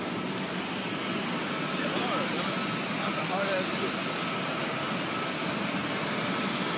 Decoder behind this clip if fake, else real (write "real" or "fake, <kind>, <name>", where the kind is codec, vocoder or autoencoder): real